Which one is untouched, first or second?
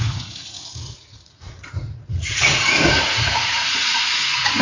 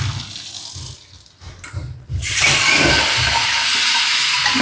second